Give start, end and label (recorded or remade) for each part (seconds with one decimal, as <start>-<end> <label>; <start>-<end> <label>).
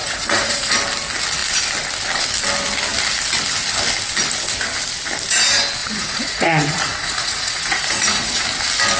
0.0-0.7 remade; 0.7-5.8 recorded; 5.8-8.4 remade; 8.4-9.0 recorded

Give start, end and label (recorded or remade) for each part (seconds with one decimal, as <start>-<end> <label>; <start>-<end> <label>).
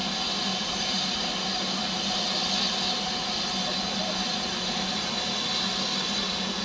0.0-6.6 recorded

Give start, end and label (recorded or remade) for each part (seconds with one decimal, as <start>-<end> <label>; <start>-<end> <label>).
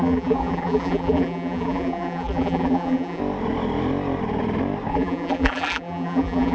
0.0-3.2 remade; 3.2-4.9 recorded; 4.9-6.5 remade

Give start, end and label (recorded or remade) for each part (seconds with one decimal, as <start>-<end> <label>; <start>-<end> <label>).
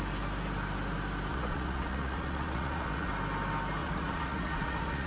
0.0-1.3 recorded; 1.3-3.1 remade; 3.1-3.8 recorded; 3.8-5.1 remade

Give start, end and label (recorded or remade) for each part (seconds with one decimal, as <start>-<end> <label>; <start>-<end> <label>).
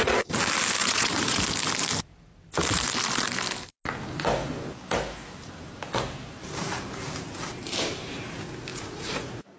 0.0-0.8 recorded; 0.8-1.4 remade; 1.4-8.7 recorded; 8.7-9.6 remade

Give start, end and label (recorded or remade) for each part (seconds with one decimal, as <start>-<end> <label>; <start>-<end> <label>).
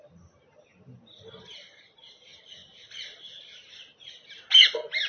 0.0-2.6 recorded; 2.6-3.7 remade; 3.7-5.1 recorded